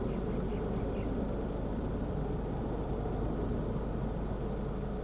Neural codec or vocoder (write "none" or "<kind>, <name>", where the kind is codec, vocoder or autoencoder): none